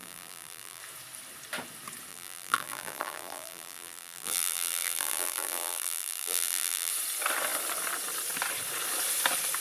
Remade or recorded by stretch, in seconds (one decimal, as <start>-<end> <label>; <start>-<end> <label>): 0.0-0.8 remade; 0.8-2.1 recorded; 2.1-6.9 remade; 6.9-9.6 recorded